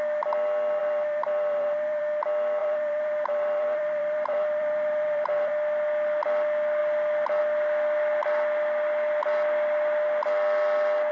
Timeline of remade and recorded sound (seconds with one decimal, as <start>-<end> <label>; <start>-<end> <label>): 0.0-0.8 recorded; 0.8-2.0 remade; 2.0-2.6 recorded; 2.6-5.5 remade; 5.5-11.1 recorded